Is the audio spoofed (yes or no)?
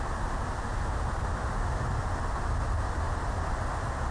no